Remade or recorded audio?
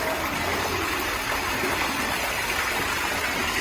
recorded